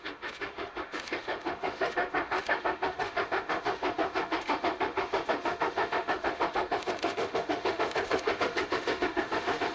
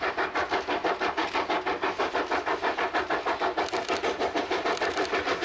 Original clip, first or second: second